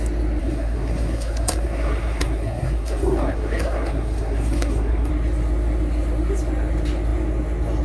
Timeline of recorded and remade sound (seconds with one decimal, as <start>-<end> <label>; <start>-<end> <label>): 0.0-0.4 recorded; 0.4-5.1 remade; 5.1-7.8 recorded